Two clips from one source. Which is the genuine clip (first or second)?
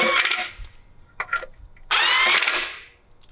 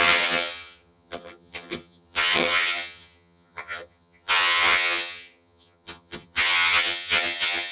first